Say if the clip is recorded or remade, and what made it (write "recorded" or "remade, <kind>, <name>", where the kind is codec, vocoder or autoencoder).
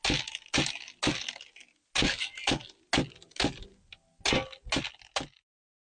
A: recorded